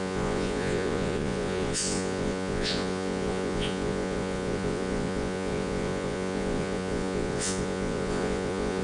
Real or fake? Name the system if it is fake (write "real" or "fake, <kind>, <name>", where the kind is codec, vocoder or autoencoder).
fake, vocoder, Vocos